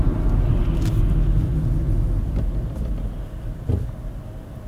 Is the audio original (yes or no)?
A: yes